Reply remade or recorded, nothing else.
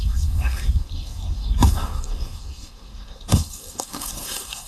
remade